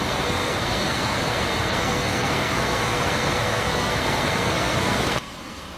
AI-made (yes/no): yes